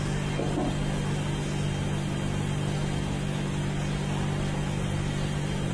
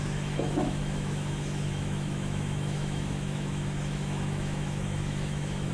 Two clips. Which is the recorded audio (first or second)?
first